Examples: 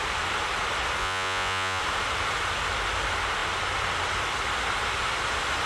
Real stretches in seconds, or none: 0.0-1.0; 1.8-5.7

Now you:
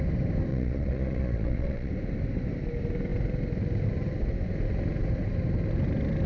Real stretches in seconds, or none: 0.0-0.5; 1.9-6.3

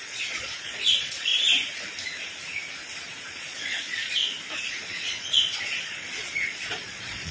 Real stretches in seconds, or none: 1.3-3.0; 4.2-4.7

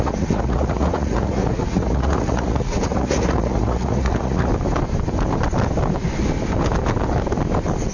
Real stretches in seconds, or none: 4.5-7.9